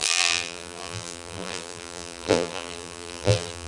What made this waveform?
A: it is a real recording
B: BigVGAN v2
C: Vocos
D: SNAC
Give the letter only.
B